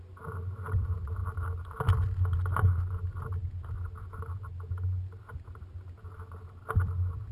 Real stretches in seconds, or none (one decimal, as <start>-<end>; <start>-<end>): 0.0-7.3